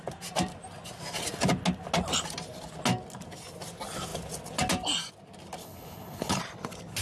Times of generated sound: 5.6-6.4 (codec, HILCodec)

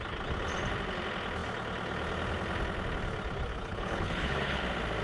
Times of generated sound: 3.5-4.6 (codec, HILCodec)

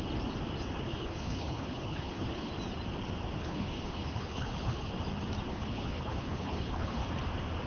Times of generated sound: 0.9-2.5 (codec, HILCodec); 3.4-4.9; 5.5-7.1

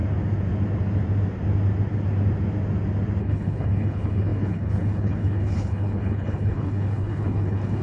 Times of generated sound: 3.2-7.8 (codec, HILCodec)

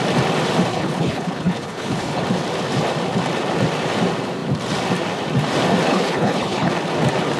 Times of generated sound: 0.7-2.2 (codec, HILCodec); 5.9-6.7

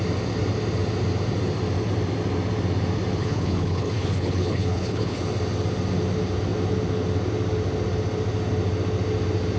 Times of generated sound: 3.2-5.2 (codec, HILCodec)

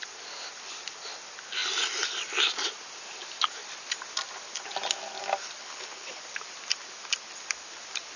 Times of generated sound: 5.6-6.2 (codec, HILCodec)